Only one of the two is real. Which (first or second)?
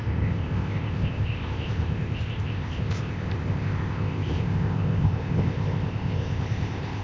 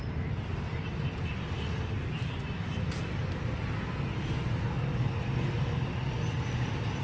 second